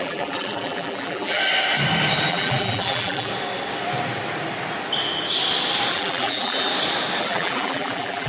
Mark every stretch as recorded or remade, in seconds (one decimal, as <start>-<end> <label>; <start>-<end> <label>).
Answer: 0.0-1.4 remade; 1.4-2.3 recorded; 2.3-3.3 remade; 3.3-5.9 recorded; 5.9-6.7 remade; 6.7-7.2 recorded; 7.2-8.3 remade